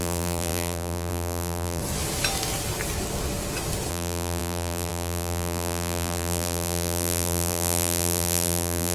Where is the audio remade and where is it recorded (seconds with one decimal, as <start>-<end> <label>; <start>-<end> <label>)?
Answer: 0.0-1.8 remade; 1.8-3.9 recorded; 3.9-8.9 remade

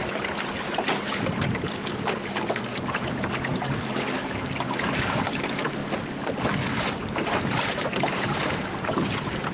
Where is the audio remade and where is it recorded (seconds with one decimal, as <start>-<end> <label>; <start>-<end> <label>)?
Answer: 0.0-3.5 recorded; 3.5-5.8 remade; 5.8-6.8 recorded; 6.8-9.5 remade

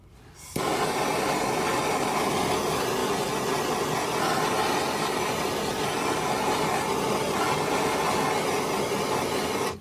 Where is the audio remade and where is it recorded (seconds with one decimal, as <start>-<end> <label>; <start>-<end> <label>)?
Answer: 0.0-9.8 recorded

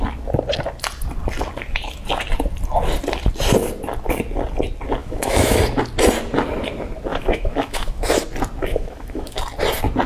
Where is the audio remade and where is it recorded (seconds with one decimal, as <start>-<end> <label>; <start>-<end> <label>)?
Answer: 0.0-5.0 recorded; 5.0-5.6 remade; 5.6-7.1 recorded; 7.1-8.2 remade; 8.2-8.6 recorded; 8.6-9.4 remade; 9.4-10.1 recorded